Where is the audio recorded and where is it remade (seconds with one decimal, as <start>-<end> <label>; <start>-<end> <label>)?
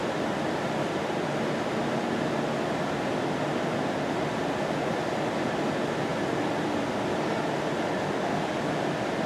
0.0-0.5 remade; 0.5-6.1 recorded; 6.1-6.7 remade; 6.7-9.3 recorded